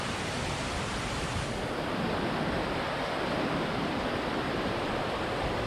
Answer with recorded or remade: remade